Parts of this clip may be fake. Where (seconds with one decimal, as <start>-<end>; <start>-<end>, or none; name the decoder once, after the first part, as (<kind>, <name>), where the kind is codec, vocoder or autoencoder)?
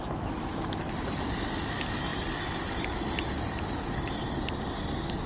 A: 0.0-0.8 (autoencoder, DAC-VAE)